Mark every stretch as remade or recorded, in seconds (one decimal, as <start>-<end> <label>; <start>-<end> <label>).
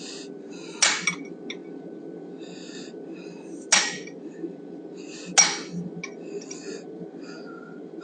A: 0.0-8.0 recorded